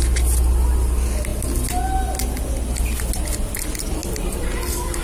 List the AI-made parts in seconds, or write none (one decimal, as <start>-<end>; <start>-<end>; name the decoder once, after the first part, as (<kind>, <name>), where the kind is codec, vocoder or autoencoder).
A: none